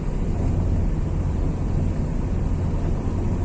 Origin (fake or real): real